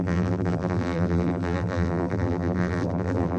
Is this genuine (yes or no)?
no